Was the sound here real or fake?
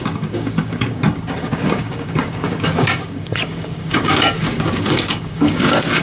fake